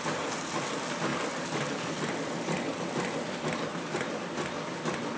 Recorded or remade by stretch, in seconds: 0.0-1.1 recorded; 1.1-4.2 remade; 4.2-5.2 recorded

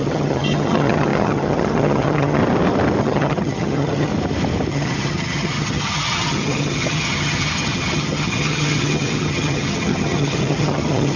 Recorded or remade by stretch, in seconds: 0.0-2.4 remade; 2.4-3.0 recorded; 3.0-4.1 remade; 4.1-4.7 recorded; 4.7-11.2 remade

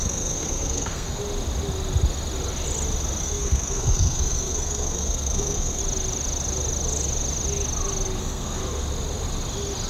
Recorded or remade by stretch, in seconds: 0.0-1.2 remade; 1.2-3.2 recorded; 3.2-5.8 remade; 5.8-8.2 recorded; 8.2-8.6 remade; 8.6-9.9 recorded

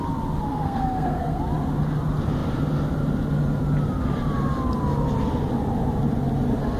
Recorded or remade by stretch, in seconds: 0.0-0.5 recorded; 0.5-1.4 remade; 1.4-6.8 recorded

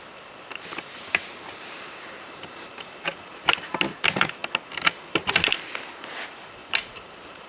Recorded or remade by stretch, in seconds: 0.0-0.7 recorded; 0.7-2.7 remade; 2.7-6.6 recorded; 6.6-7.5 remade

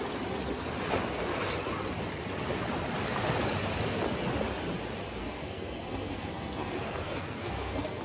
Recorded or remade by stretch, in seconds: 0.0-5.2 recorded; 5.2-8.0 remade

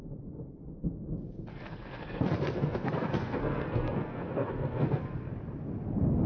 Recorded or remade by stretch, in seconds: 0.0-1.5 recorded; 1.5-5.3 remade; 5.3-6.3 recorded